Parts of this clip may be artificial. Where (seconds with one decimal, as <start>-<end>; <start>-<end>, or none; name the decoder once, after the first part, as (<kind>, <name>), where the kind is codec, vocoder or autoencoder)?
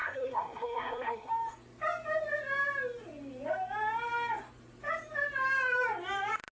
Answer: 0.0-1.3 (codec, SNAC)